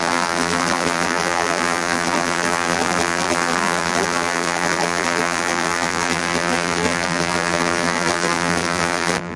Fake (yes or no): yes